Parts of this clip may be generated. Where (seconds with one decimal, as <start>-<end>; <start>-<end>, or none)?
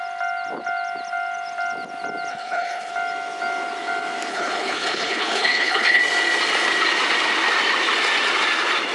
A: 2.3-2.9; 4.3-6.0